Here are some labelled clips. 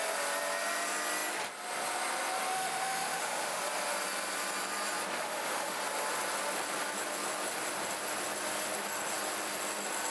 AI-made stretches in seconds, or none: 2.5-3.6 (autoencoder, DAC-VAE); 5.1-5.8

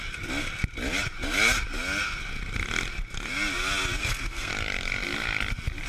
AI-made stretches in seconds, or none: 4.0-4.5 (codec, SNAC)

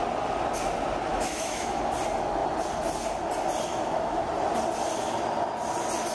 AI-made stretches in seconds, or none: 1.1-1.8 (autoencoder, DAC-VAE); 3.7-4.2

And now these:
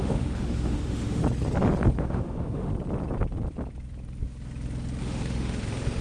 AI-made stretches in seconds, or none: 0.0-1.2 (autoencoder, DAC-VAE); 2.0-2.7; 5.0-6.0

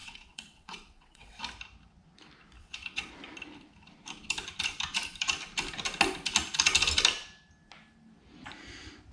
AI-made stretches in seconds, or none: 0.0-1.4 (vocoder, WaveNeXt); 2.6-3.1